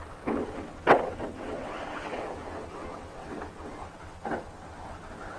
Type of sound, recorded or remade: remade